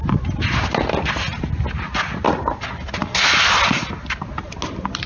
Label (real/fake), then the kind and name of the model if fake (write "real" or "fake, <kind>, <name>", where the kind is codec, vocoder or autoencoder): real